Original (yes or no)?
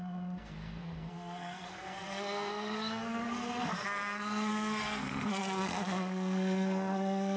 no